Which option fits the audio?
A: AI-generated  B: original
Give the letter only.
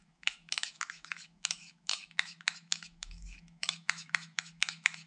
A